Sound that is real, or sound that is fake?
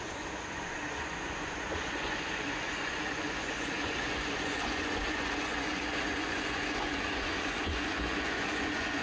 fake